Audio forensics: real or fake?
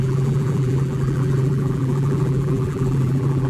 fake